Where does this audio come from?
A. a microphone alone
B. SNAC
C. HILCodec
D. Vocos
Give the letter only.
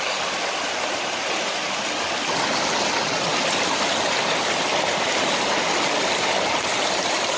A